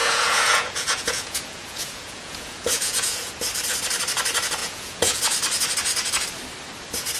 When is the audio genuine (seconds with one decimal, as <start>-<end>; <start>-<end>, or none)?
3.3-4.6; 5.2-7.2